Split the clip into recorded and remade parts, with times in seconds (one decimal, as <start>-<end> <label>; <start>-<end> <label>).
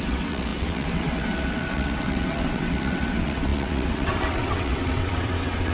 0.0-5.7 remade